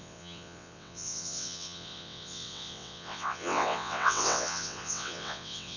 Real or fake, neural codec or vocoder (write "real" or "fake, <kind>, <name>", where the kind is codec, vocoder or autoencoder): fake, vocoder, WaveNeXt